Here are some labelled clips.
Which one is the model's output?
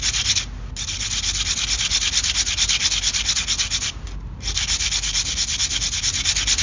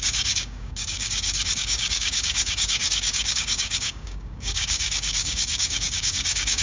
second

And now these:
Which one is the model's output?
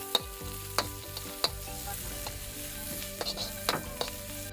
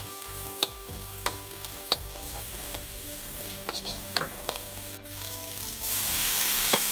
second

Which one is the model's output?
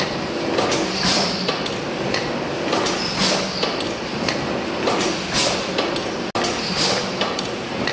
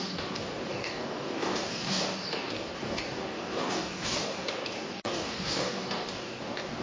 second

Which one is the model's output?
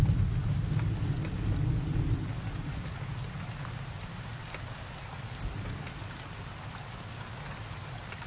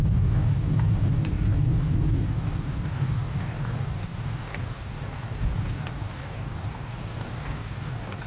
second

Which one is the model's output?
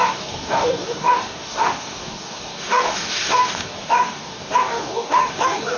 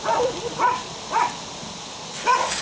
first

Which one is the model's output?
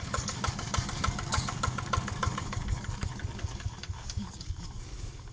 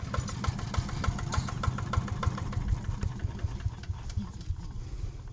first